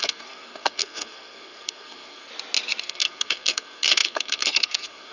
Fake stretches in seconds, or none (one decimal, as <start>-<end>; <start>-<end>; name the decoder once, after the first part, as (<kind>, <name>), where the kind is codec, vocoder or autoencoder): 0.0-2.3 (codec, SNAC); 2.8-5.1